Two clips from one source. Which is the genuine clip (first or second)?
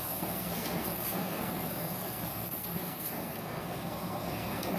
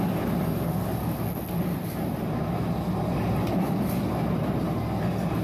second